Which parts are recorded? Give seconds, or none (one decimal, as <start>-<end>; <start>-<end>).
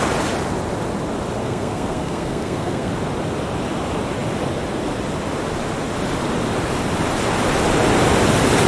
0.0-1.4; 2.9-8.7